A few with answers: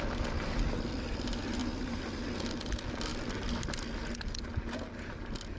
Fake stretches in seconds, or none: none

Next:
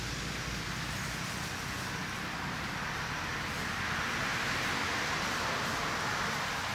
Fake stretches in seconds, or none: 4.3-5.1 (vocoder, BigVGAN v2)